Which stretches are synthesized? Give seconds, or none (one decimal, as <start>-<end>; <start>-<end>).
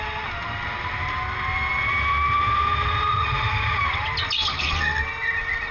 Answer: 3.1-3.8